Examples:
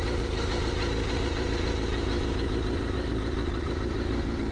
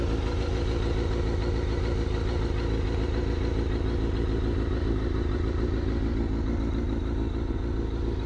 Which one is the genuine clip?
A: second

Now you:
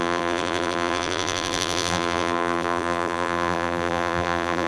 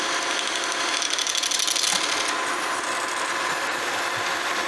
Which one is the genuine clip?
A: second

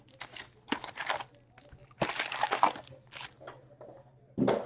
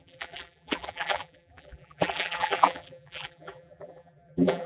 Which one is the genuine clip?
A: first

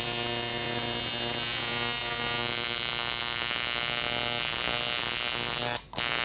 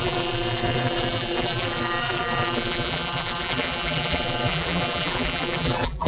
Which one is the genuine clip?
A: first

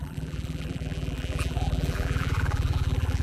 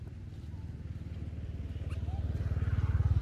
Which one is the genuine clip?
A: second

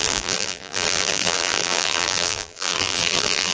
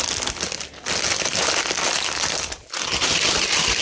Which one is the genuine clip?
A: second